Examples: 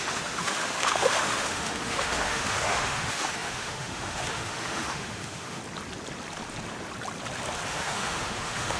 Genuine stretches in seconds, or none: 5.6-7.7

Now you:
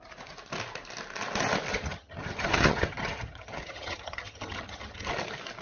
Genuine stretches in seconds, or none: 0.0-1.7; 5.1-5.6

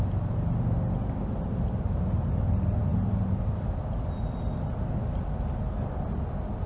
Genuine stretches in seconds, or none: 0.0-6.7